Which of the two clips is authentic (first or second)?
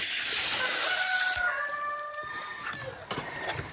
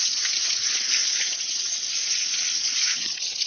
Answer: first